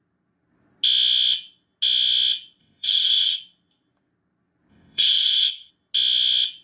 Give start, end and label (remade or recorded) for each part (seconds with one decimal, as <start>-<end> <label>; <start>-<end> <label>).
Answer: 0.0-2.6 recorded; 2.6-3.4 remade; 3.4-4.7 recorded; 4.7-5.7 remade; 5.7-6.6 recorded